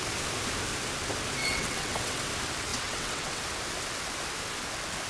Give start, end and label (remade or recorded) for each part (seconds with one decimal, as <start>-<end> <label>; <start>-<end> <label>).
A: 0.0-1.4 recorded; 1.4-2.2 remade; 2.2-2.7 recorded; 2.7-3.4 remade; 3.4-5.1 recorded